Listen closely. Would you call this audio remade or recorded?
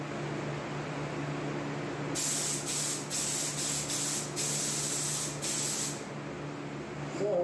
recorded